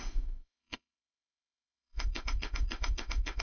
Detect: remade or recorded remade